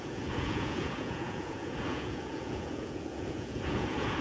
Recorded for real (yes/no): no